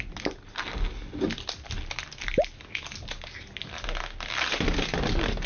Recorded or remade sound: recorded